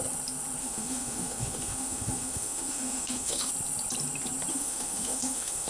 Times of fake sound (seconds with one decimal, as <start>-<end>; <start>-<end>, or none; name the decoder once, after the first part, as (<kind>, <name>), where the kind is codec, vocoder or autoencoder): 0.6-3.5 (autoencoder, DAC-VAE); 4.5-5.7